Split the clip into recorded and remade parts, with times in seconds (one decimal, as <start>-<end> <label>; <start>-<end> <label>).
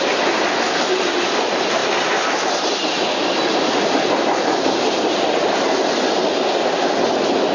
0.0-7.5 recorded